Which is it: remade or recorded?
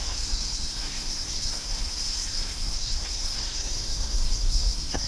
remade